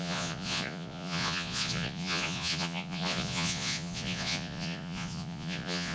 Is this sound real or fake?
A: fake